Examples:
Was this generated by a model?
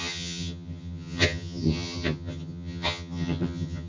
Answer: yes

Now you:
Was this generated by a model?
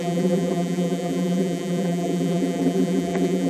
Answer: yes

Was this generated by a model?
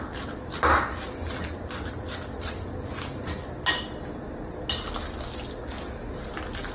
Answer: no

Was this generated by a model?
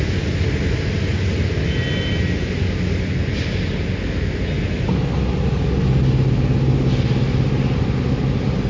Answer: no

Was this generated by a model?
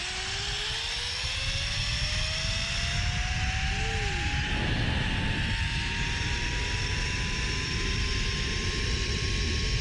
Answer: no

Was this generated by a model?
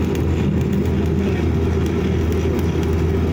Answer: no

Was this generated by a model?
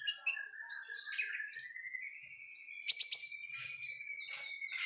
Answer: no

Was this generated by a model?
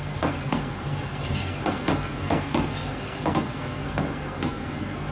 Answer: yes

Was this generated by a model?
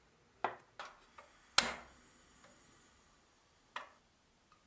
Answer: no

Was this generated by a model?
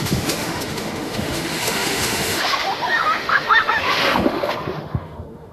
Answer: yes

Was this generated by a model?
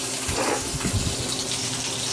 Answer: no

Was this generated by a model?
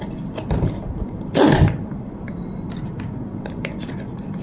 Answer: no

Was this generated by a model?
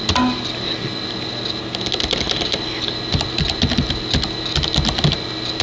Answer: no